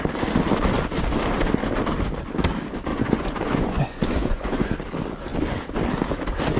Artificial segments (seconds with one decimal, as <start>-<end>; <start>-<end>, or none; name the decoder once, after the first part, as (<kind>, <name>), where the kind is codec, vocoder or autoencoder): 2.9-4.7 (vocoder, Vocos)